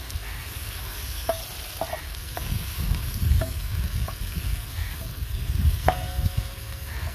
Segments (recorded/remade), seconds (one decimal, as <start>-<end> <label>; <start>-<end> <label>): 0.0-1.4 remade; 1.4-2.0 recorded; 2.0-7.1 remade